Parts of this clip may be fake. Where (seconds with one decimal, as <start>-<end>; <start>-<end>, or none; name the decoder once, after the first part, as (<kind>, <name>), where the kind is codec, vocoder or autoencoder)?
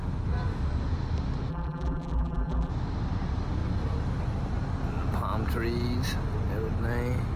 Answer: 1.5-2.7 (vocoder, BigVGAN v2)